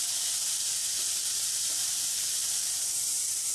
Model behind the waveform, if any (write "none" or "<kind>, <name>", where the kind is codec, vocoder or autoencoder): vocoder, BigVGAN v2